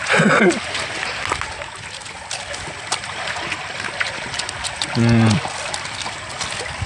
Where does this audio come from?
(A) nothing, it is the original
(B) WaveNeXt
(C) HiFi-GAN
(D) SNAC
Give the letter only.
A